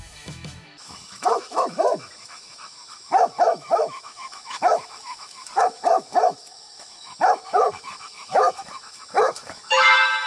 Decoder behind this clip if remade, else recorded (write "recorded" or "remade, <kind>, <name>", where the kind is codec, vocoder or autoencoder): remade, autoencoder, DAC-VAE